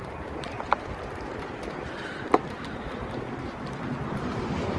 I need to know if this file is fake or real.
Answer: fake